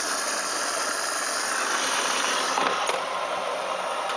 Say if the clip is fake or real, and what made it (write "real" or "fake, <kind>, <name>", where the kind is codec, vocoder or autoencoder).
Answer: real